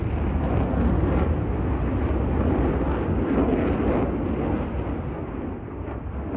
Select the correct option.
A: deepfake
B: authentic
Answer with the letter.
B